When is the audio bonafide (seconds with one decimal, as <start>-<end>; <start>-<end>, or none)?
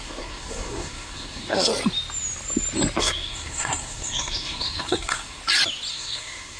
1.7-3.0; 5.4-5.9